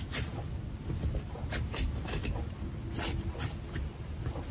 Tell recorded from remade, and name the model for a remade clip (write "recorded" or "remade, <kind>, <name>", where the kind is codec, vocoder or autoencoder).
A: recorded